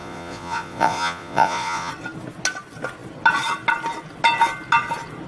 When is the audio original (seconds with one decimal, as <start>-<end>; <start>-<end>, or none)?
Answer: 1.9-5.3